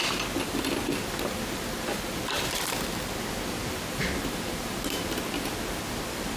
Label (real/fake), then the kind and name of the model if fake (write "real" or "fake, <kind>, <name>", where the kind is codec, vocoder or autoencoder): real